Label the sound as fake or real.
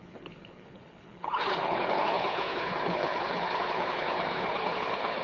fake